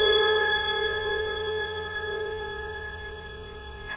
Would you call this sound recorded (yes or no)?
no